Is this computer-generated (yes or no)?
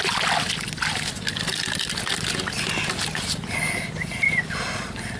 no